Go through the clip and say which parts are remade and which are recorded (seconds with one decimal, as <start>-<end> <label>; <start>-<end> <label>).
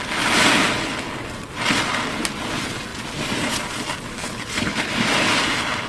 0.0-4.2 recorded; 4.2-4.9 remade; 4.9-5.9 recorded